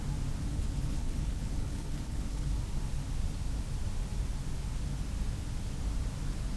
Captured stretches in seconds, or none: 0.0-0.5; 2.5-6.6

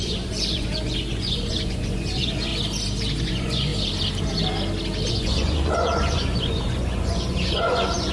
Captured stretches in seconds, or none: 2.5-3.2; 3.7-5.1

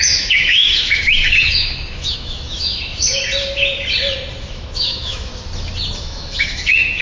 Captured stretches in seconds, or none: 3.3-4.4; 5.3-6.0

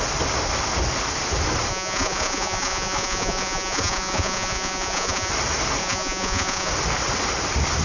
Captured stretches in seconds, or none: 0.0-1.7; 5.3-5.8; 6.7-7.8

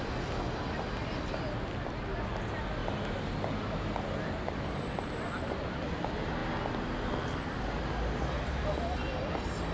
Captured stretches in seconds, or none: 0.0-9.7